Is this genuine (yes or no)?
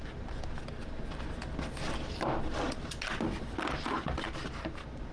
yes